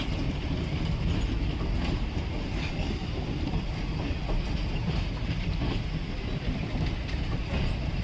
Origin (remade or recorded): recorded